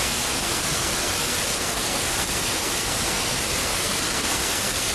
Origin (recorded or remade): remade